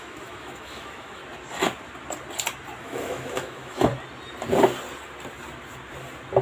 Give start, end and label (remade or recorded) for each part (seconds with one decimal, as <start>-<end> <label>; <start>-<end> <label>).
0.0-1.2 remade; 1.2-2.8 recorded; 2.8-3.9 remade; 3.9-6.4 recorded